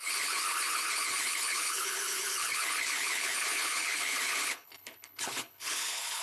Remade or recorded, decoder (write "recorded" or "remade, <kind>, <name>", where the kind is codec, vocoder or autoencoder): remade, codec, HILCodec